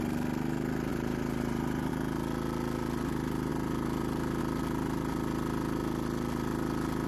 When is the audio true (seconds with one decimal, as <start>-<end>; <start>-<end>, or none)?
0.0-0.9; 1.9-3.5; 4.4-7.1